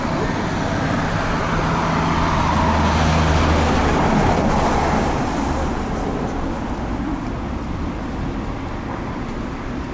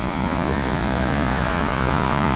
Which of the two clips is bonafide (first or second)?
first